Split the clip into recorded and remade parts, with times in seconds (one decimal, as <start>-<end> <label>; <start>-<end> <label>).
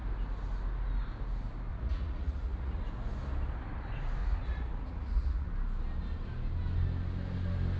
0.0-1.7 recorded; 1.7-2.8 remade; 2.8-4.2 recorded; 4.2-5.5 remade; 5.5-7.8 recorded